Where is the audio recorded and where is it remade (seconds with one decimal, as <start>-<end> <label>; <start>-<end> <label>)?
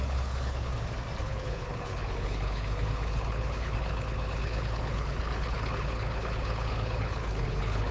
0.0-0.7 remade; 0.7-1.2 recorded; 1.2-7.9 remade